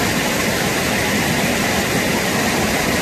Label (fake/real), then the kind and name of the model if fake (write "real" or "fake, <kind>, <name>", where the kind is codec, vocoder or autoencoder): real